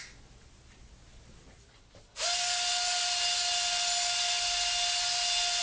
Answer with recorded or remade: recorded